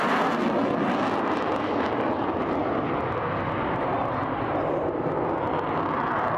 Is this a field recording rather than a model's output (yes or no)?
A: yes